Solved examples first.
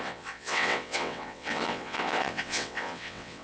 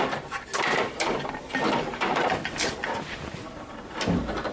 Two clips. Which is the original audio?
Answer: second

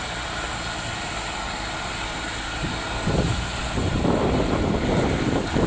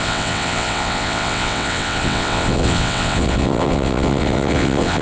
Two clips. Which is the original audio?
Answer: first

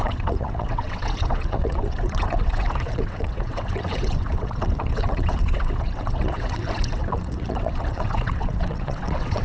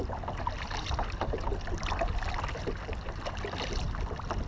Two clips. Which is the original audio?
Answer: second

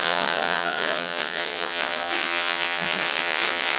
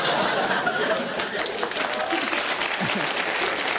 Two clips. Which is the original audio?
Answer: second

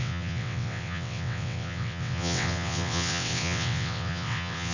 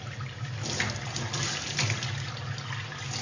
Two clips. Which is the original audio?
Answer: second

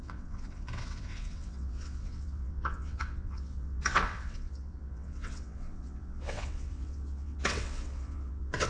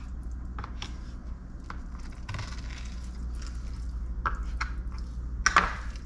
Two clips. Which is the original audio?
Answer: second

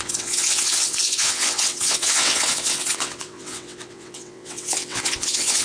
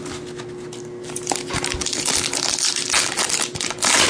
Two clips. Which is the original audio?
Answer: second